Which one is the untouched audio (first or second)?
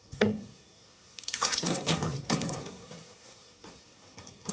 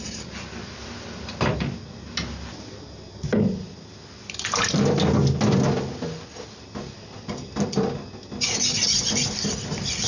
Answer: second